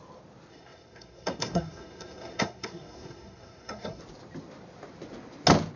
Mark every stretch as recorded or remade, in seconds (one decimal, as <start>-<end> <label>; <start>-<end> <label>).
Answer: 0.0-0.5 recorded; 0.5-4.0 remade; 4.0-5.8 recorded